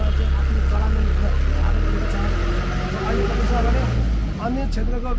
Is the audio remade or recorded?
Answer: recorded